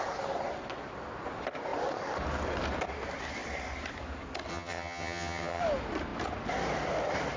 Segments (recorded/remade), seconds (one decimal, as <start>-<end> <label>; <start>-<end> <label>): 0.0-4.5 recorded; 4.5-5.6 remade; 5.6-7.4 recorded